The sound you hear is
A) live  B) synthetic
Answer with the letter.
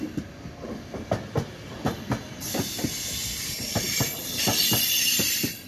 A